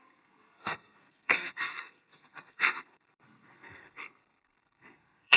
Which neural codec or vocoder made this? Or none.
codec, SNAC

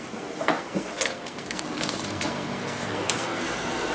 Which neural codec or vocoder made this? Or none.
codec, SNAC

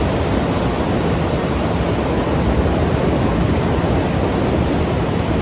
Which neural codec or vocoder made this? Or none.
none